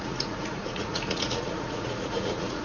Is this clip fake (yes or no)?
yes